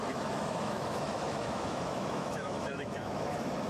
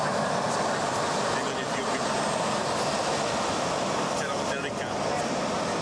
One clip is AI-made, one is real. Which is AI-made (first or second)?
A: first